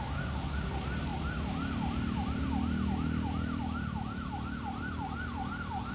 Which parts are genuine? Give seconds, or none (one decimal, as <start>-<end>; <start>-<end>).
0.0-5.9